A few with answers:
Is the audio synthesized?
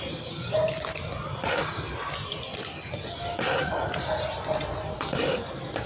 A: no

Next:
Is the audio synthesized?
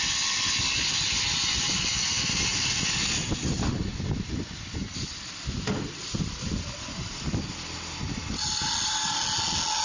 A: no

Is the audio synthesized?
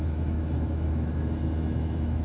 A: yes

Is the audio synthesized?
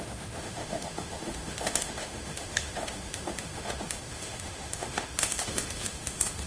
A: yes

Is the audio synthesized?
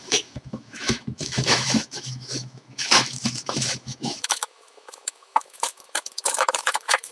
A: yes